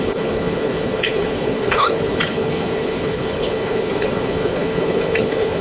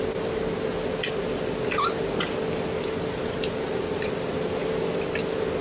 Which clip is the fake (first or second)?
first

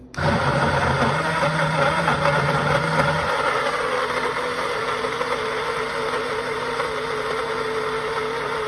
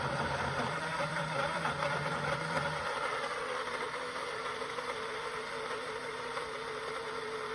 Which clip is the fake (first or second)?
second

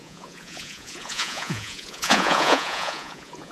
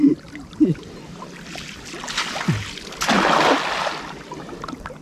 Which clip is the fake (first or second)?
first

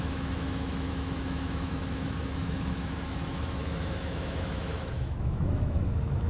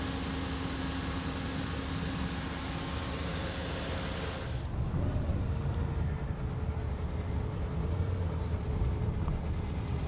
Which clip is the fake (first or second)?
first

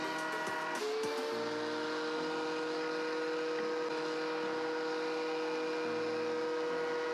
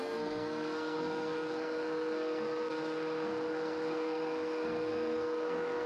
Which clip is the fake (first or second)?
second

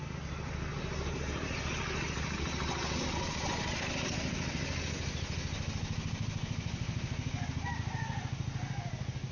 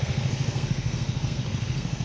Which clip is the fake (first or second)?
second